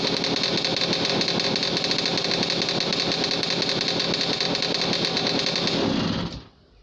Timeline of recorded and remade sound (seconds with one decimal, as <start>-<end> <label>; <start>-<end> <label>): 0.0-6.8 recorded